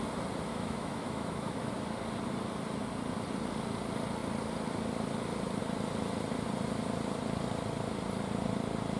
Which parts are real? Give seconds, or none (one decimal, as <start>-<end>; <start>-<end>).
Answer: 0.0-0.5; 1.7-9.0